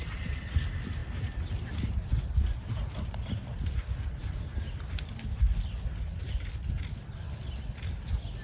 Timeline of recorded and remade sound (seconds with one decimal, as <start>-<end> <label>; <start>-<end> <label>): 0.0-8.4 recorded